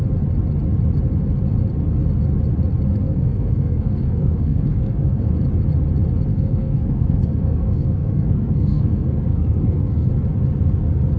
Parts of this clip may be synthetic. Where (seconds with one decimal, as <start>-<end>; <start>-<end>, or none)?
2.9-5.3; 6.3-10.1